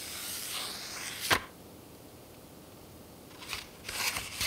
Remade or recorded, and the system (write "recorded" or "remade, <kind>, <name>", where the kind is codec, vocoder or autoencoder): recorded